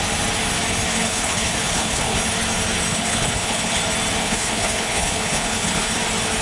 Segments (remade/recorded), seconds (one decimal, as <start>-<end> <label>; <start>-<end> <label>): 0.0-0.9 recorded; 0.9-2.2 remade; 2.2-2.9 recorded; 2.9-3.8 remade; 3.8-4.2 recorded; 4.2-5.9 remade; 5.9-6.4 recorded